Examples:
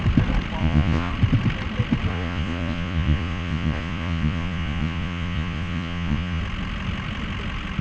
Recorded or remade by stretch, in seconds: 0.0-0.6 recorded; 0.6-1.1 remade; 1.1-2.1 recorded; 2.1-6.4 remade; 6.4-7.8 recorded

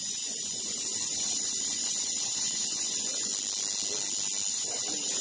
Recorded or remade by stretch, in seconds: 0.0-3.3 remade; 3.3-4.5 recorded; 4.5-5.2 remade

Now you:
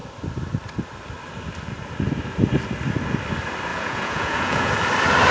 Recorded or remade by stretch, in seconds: 0.0-3.7 recorded; 3.7-4.7 remade; 4.7-5.3 recorded